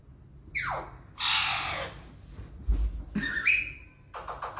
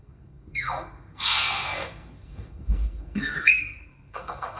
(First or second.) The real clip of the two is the first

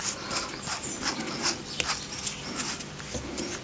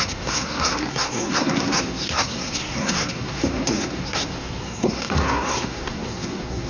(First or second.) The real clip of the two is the first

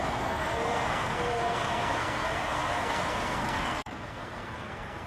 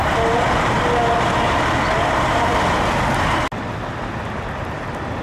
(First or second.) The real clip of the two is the second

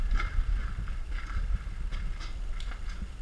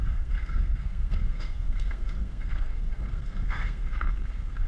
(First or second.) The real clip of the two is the first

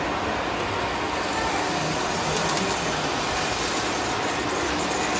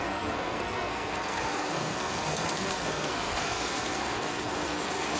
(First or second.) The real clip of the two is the first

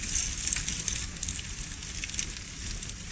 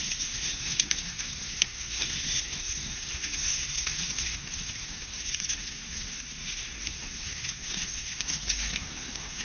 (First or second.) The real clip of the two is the first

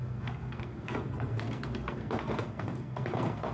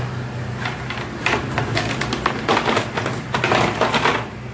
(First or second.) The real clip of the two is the second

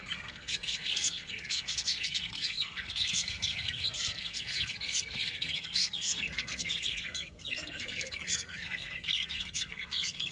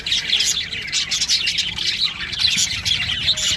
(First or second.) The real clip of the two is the second